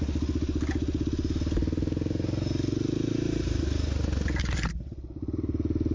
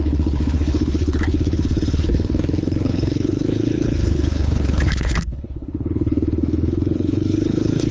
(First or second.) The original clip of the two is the first